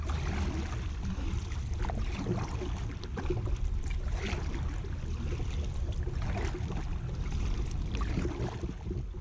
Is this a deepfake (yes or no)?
no